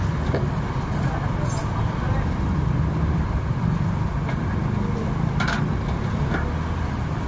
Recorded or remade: recorded